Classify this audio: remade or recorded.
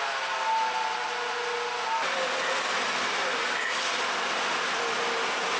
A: recorded